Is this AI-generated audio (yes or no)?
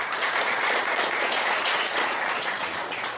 yes